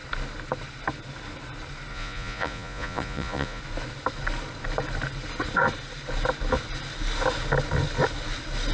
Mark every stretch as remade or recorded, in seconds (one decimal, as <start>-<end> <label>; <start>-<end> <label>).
0.0-1.9 recorded; 1.9-3.6 remade; 3.6-8.7 recorded